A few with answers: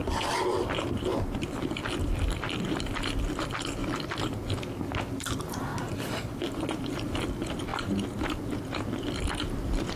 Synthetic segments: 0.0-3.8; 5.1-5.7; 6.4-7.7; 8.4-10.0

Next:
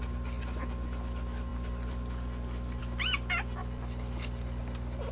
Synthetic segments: 3.6-4.6

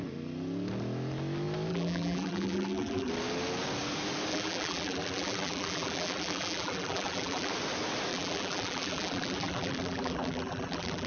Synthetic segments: 1.7-3.1; 4.3-7.5; 8.1-11.1

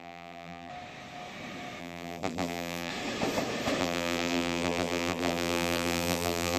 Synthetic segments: 0.0-0.7; 1.8-2.9; 3.8-6.6

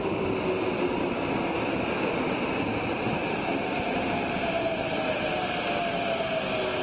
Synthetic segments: 3.2-4.8